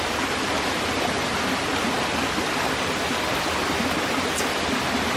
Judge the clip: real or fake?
real